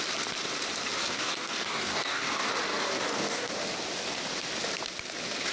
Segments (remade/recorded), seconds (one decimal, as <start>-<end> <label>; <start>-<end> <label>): 0.0-1.0 recorded; 1.0-2.5 remade; 2.5-2.9 recorded; 2.9-3.5 remade; 3.5-5.5 recorded